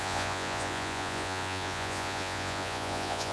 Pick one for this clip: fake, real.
fake